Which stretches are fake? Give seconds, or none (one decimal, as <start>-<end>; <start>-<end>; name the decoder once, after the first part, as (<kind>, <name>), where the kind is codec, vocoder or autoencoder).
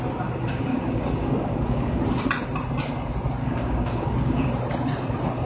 0.7-2.0 (codec, DAC); 3.4-4.5